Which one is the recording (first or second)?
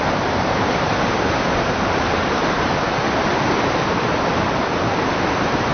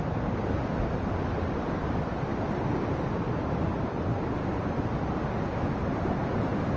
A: second